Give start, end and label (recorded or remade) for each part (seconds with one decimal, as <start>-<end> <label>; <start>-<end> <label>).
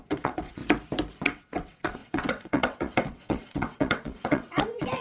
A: 0.0-0.6 remade; 0.6-1.2 recorded; 1.2-5.0 remade